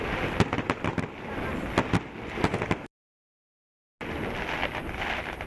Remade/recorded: recorded